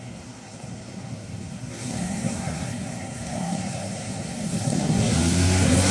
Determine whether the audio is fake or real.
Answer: fake